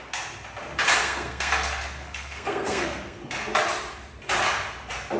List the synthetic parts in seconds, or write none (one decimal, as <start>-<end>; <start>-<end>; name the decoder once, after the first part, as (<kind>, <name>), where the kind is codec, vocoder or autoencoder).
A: 1.0-3.2 (codec, SNAC)